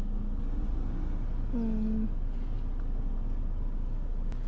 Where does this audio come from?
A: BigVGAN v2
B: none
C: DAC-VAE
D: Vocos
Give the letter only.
B